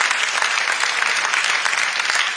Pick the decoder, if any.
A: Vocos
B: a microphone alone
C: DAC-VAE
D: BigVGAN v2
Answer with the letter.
B